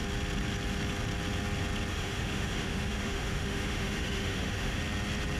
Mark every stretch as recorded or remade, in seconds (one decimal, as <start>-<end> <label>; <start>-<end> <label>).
0.0-1.9 recorded; 1.9-4.8 remade; 4.8-5.4 recorded